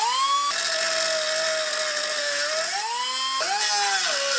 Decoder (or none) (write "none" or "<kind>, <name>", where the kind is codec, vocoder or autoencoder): none